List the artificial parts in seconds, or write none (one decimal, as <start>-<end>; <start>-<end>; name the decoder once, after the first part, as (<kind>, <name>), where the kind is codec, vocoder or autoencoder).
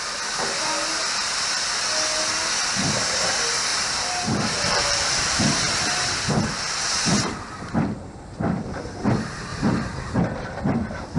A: 3.7-5.4 (vocoder, BigVGAN v2); 9.5-10.2